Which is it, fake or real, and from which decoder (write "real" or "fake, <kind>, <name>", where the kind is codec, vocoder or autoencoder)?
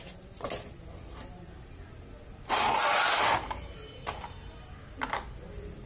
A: real